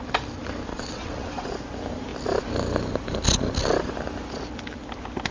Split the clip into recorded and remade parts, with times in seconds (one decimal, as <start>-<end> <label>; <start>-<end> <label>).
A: 0.0-0.7 recorded; 0.7-1.5 remade; 1.5-5.3 recorded